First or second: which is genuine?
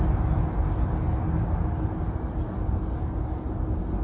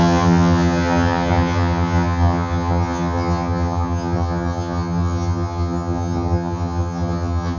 first